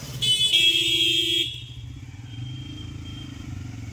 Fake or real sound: real